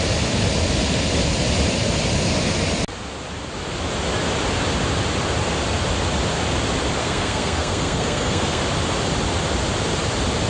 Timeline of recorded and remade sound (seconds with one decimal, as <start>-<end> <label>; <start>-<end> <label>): 0.0-7.0 recorded; 7.0-8.6 remade; 8.6-10.5 recorded